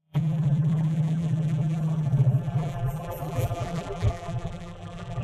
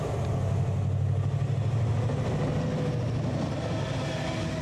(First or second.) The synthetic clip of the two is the first